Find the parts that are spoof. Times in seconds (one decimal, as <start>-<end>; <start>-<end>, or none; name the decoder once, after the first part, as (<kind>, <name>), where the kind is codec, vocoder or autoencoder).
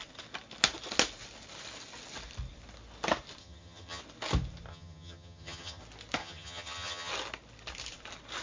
3.4-4.0 (vocoder, HiFi-GAN); 4.7-5.8; 6.2-7.1